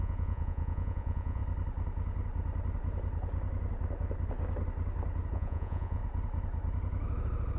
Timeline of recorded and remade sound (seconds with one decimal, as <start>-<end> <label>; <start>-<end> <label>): 0.0-1.4 remade; 1.4-5.3 recorded; 5.3-6.0 remade; 6.0-7.6 recorded